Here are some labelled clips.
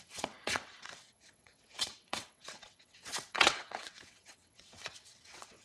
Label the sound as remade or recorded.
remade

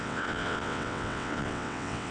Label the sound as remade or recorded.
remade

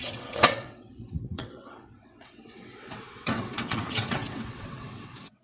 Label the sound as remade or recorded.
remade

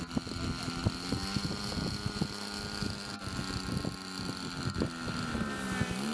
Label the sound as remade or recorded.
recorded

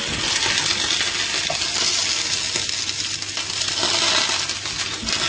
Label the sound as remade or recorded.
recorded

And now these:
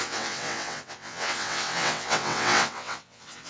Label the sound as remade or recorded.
remade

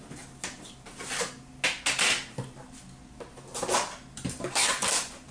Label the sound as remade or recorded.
recorded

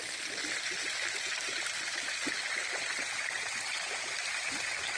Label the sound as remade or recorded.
recorded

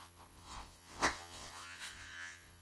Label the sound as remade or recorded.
remade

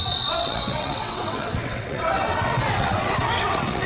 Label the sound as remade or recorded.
remade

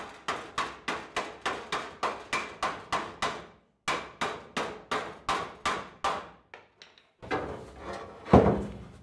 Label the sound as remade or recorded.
recorded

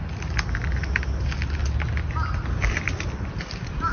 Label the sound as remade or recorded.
recorded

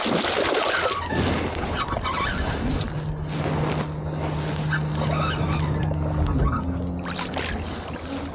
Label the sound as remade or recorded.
recorded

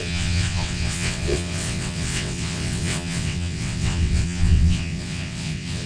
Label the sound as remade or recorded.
remade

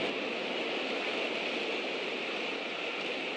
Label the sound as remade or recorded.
recorded